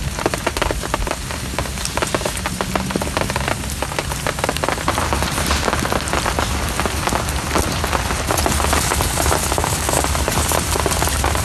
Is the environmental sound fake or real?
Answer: real